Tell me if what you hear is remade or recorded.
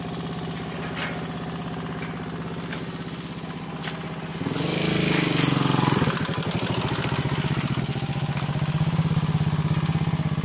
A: recorded